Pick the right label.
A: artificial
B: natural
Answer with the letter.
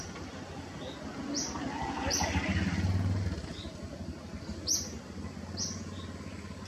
B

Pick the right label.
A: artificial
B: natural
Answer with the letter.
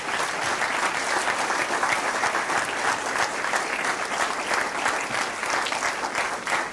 B